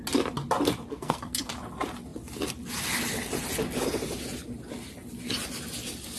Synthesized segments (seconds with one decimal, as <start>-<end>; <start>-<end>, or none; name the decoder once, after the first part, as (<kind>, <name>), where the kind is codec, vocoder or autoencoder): 0.9-1.5 (codec, SNAC)